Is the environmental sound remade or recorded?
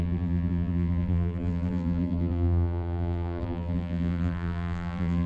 remade